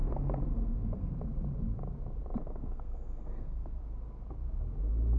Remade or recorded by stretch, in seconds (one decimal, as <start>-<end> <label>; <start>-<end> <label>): 0.0-1.1 remade; 1.1-2.4 recorded; 2.4-3.8 remade; 3.8-5.2 recorded